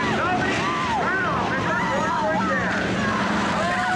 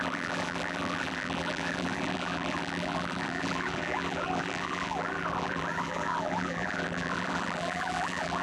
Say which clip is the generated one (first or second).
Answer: second